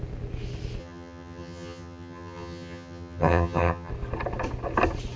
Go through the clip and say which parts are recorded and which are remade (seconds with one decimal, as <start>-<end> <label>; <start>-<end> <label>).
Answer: 0.0-0.8 recorded; 0.8-3.9 remade; 3.9-5.2 recorded